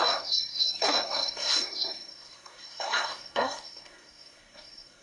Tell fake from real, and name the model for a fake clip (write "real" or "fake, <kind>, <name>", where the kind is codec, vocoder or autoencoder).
fake, codec, SNAC